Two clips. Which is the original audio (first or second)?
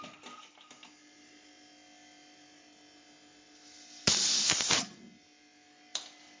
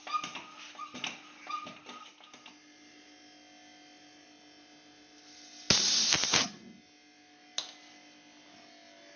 second